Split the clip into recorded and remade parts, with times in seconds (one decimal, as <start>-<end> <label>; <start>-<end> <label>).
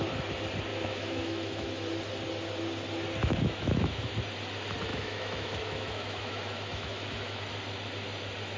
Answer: 0.0-0.7 recorded; 0.7-1.7 remade; 1.7-3.2 recorded; 3.2-4.1 remade; 4.1-4.9 recorded; 4.9-7.4 remade; 7.4-8.6 recorded